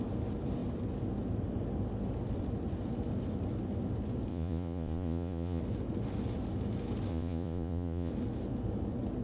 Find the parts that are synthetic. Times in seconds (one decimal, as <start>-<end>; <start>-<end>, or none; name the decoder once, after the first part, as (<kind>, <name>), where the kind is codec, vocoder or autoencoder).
4.3-5.6 (vocoder, Vocos); 7.1-8.1